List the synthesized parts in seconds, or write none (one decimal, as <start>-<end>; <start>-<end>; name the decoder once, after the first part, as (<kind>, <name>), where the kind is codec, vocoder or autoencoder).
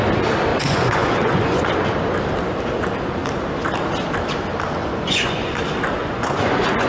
0.5-1.6 (vocoder, Vocos); 4.8-5.6; 6.0-6.9